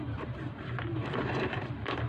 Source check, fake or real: fake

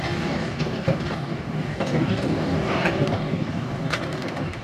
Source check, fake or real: fake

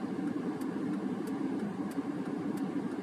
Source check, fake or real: real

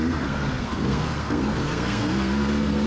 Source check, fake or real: fake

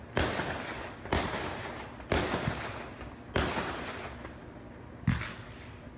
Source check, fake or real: real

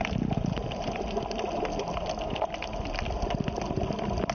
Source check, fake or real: real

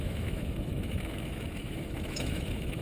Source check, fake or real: fake